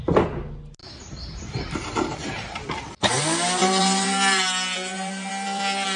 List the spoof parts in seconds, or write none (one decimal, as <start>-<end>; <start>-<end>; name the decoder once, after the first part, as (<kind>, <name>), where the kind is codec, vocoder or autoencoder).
0.8-3.1 (vocoder, BigVGAN v2); 3.6-5.3